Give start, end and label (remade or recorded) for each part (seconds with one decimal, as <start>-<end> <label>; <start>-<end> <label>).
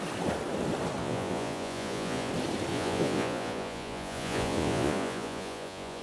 0.0-1.0 recorded; 1.0-2.3 remade; 2.3-2.7 recorded; 2.7-6.0 remade